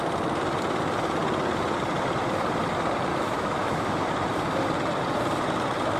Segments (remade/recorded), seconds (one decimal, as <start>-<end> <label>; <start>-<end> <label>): 0.0-3.1 recorded; 3.1-4.1 remade; 4.1-6.0 recorded

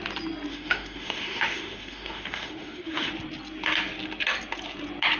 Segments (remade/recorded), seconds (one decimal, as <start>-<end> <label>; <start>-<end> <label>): 0.0-0.5 recorded; 0.5-3.1 remade; 3.1-5.2 recorded

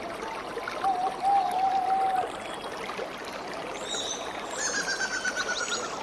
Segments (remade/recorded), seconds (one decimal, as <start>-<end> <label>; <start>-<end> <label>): 0.0-6.0 recorded

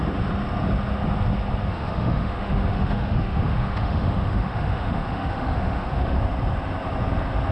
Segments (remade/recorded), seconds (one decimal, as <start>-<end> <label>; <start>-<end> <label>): 0.0-1.7 recorded; 1.7-6.2 remade; 6.2-7.5 recorded

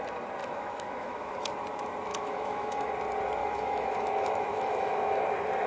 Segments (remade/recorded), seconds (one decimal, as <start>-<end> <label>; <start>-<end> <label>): 0.0-0.4 recorded; 0.4-1.3 remade; 1.3-2.1 recorded; 2.1-2.9 remade; 2.9-3.4 recorded; 3.4-5.2 remade; 5.2-5.7 recorded

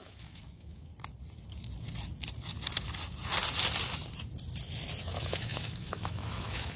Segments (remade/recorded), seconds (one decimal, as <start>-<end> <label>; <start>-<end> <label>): 0.0-0.9 remade; 0.9-5.0 recorded; 5.0-6.8 remade

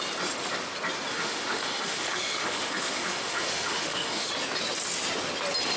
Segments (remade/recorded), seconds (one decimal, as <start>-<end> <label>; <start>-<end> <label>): 0.0-1.1 recorded; 1.1-4.3 remade; 4.3-5.8 recorded

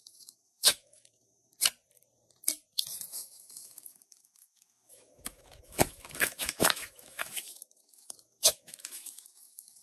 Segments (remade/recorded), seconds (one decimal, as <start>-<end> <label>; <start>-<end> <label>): 0.0-1.5 remade; 1.5-3.1 recorded; 3.1-9.8 remade